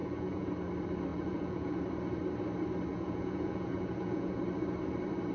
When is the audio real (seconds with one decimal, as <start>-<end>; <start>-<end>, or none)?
0.5-1.1; 1.8-2.9; 4.4-5.3